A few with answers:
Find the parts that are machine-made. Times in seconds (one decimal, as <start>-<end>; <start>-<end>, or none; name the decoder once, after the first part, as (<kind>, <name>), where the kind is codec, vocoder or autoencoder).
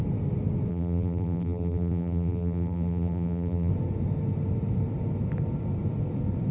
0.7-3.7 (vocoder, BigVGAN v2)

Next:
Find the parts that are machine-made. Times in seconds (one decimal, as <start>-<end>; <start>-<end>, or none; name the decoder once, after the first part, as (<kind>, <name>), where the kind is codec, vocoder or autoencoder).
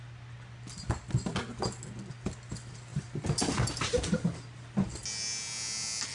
none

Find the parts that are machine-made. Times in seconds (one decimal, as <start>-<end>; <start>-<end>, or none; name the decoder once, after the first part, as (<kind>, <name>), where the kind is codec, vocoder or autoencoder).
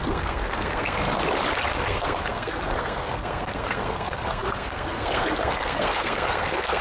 0.0-1.2 (codec, SNAC); 1.7-6.8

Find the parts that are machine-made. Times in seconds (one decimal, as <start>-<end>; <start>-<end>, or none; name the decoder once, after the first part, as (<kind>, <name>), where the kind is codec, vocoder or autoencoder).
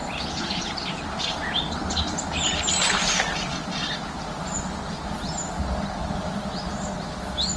none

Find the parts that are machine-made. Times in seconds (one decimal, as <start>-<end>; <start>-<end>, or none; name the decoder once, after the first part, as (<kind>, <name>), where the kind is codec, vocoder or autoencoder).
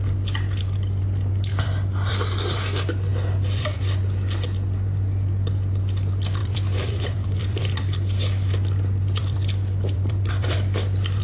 1.5-2.1 (vocoder, BigVGAN v2); 3.1-4.0; 6.4-11.2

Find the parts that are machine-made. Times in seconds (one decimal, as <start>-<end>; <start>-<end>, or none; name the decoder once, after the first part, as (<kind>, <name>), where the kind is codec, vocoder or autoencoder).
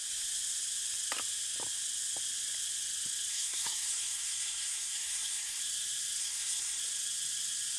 3.3-5.6 (codec, SNAC); 6.2-6.8